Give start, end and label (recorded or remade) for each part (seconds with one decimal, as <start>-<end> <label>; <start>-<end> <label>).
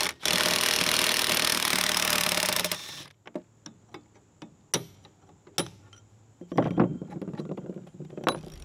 0.0-1.5 recorded; 1.5-2.9 remade; 2.9-6.9 recorded; 6.9-7.7 remade; 7.7-8.6 recorded